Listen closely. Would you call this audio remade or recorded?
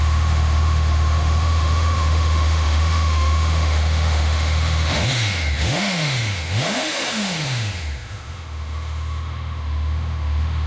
remade